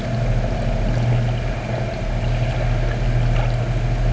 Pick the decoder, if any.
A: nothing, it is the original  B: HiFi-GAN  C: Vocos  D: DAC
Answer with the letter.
A